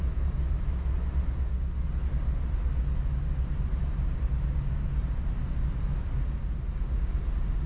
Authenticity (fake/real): real